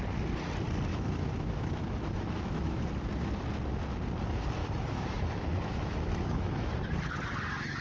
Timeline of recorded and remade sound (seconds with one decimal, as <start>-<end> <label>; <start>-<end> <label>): 0.0-0.9 recorded; 0.9-2.9 remade; 2.9-4.6 recorded; 4.6-6.7 remade; 6.7-7.8 recorded